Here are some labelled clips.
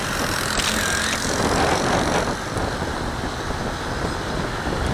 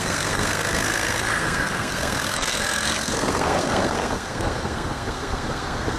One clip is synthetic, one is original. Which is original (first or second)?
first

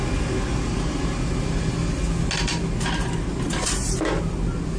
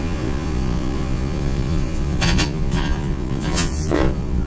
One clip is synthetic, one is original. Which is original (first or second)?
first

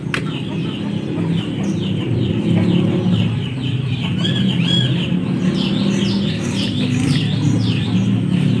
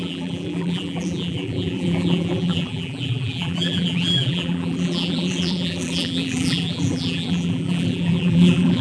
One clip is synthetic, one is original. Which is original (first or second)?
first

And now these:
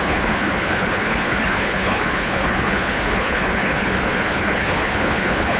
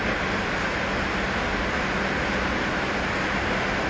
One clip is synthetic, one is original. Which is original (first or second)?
second